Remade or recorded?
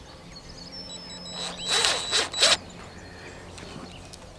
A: recorded